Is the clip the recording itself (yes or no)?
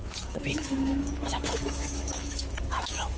no